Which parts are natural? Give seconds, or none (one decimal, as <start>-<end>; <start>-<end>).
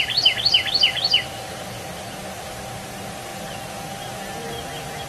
0.0-5.1